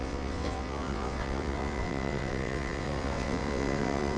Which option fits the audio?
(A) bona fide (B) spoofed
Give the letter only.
B